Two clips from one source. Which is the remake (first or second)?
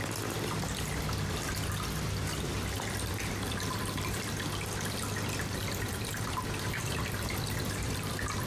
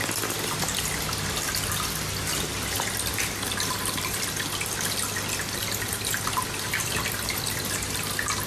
first